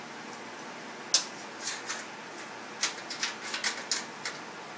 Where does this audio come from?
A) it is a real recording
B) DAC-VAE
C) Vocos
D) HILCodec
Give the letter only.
A